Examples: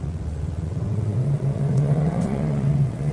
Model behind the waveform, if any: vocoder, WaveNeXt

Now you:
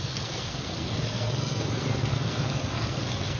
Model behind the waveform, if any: codec, SNAC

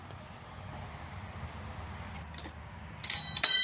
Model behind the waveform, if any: none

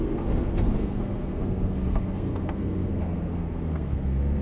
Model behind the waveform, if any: codec, SNAC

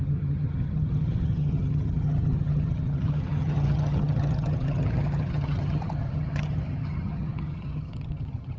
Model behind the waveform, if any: vocoder, HiFi-GAN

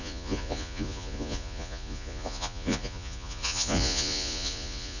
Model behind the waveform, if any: vocoder, Vocos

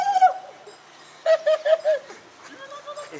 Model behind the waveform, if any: none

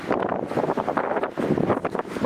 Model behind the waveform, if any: none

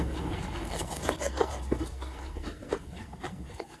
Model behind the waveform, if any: codec, SNAC